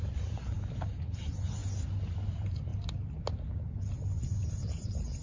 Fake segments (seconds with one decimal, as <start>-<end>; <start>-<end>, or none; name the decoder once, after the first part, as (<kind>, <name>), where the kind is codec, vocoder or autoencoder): 0.0-1.6 (vocoder, BigVGAN v2); 2.3-2.7; 4.5-5.2